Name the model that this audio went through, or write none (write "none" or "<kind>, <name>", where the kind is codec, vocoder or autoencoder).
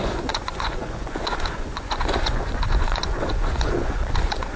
vocoder, Vocos